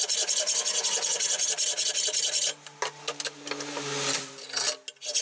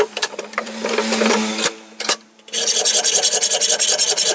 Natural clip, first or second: first